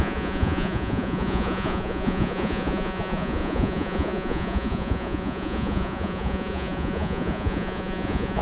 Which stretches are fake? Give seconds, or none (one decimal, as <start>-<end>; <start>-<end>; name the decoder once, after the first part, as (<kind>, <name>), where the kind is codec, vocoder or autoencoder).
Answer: 0.0-8.4 (vocoder, Vocos)